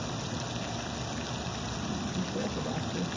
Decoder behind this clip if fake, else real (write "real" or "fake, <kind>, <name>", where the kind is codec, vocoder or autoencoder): real